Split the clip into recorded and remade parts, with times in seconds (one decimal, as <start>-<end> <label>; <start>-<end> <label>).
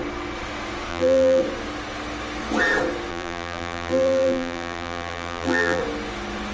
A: 0.0-0.9 recorded; 0.9-1.4 remade; 1.4-3.1 recorded; 3.1-5.8 remade; 5.8-6.5 recorded